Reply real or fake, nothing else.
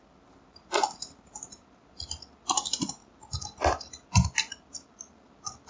real